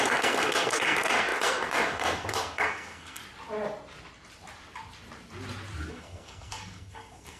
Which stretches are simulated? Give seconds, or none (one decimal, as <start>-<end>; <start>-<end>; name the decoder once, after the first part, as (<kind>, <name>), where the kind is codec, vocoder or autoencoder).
0.0-3.2 (codec, SNAC); 5.9-7.4